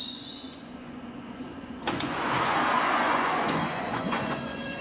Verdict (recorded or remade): remade